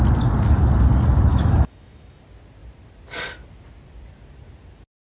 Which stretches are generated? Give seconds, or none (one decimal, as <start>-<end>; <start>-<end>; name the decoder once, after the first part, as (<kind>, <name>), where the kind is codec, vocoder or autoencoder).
1.3-2.2 (autoencoder, DAC-VAE)